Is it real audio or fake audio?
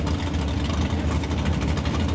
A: real